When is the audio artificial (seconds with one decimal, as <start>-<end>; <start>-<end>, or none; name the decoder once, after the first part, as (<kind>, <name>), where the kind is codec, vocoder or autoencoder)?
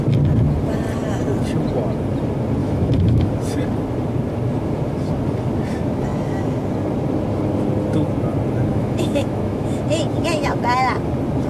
2.6-3.3 (autoencoder, DAC-VAE); 8.7-9.8